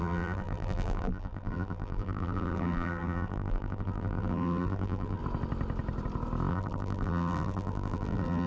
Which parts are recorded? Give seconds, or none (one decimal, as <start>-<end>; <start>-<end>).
5.2-6.5